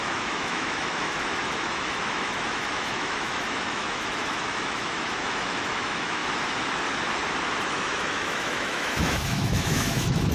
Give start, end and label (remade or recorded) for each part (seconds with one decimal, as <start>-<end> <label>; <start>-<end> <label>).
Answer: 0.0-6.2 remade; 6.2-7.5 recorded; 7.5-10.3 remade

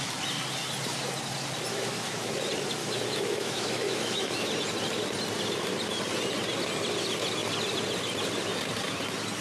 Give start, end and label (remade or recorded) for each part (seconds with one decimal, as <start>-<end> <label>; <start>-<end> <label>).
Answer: 0.0-1.7 recorded; 1.7-2.3 remade; 2.3-2.8 recorded; 2.8-4.5 remade; 4.5-9.4 recorded

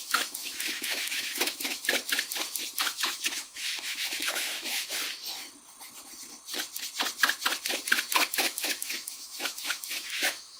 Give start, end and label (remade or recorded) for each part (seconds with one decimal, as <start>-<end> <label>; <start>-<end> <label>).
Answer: 0.0-1.8 remade; 1.8-2.8 recorded; 2.8-4.9 remade; 4.9-8.3 recorded; 8.3-10.6 remade

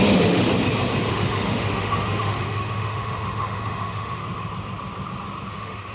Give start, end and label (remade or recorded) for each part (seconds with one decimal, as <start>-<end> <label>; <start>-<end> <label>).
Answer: 0.0-0.5 remade; 0.5-1.1 recorded; 1.1-4.2 remade; 4.2-5.5 recorded; 5.5-5.9 remade

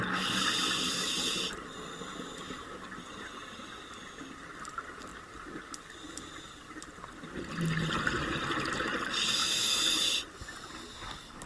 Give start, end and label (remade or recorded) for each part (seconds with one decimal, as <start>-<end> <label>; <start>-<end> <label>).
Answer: 0.0-9.4 recorded; 9.4-10.0 remade; 10.0-11.5 recorded

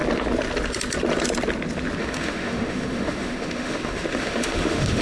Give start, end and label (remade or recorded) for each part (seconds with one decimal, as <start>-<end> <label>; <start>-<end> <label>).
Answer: 0.0-2.0 recorded; 2.0-5.0 remade